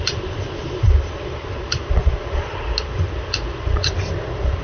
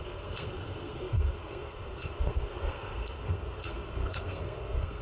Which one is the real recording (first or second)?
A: first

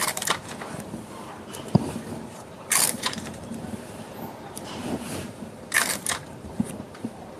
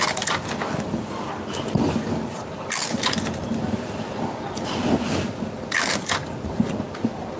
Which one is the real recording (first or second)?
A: second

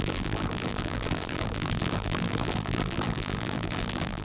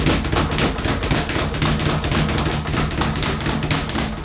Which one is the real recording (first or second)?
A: second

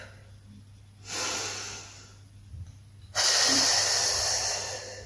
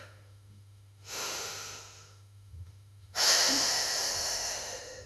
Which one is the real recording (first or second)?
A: first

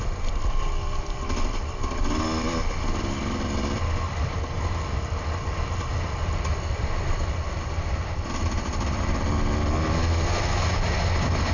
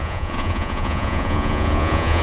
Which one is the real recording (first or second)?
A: first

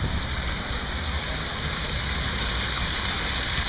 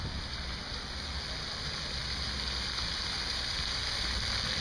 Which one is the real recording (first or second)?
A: second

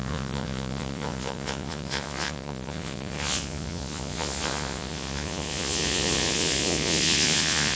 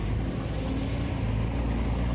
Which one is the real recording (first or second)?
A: second